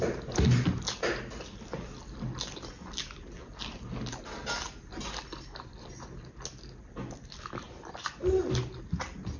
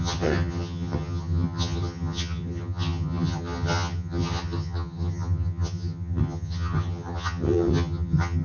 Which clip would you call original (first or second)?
first